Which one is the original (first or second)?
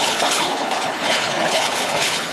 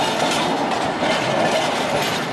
second